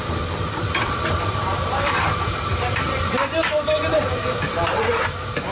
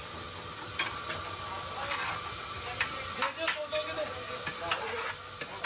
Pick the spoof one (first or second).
first